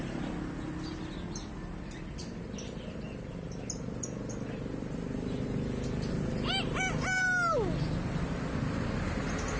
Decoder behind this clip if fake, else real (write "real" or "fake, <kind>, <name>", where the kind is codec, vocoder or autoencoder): real